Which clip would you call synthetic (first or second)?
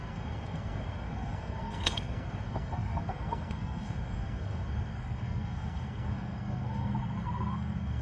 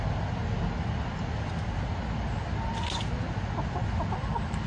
first